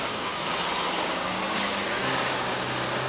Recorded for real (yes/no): no